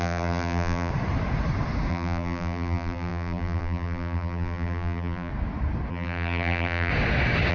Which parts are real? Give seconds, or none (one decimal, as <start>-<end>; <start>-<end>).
0.9-1.9; 5.3-5.9; 6.9-7.5